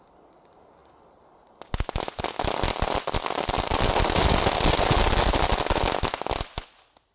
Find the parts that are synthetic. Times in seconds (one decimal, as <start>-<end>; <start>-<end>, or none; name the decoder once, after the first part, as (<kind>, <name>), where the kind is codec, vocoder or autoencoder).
none